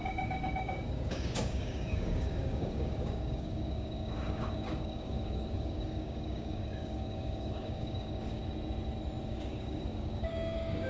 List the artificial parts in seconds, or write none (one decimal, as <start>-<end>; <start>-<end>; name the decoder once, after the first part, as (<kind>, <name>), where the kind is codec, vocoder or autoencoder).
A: 0.0-8.4 (codec, DAC); 9.3-10.9